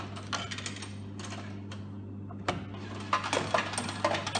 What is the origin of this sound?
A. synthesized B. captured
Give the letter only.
B